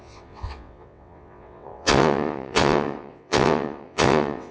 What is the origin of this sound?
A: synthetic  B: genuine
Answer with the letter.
A